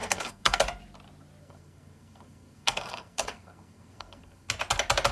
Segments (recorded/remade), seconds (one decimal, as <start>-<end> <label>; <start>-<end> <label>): 0.0-0.6 remade; 0.6-1.4 recorded; 1.4-4.5 remade; 4.5-5.1 recorded